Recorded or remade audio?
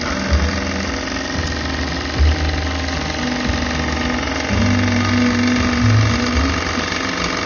recorded